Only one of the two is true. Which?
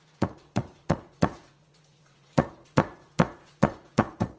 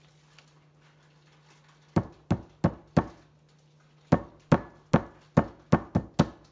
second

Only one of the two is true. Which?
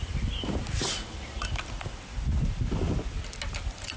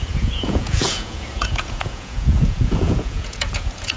first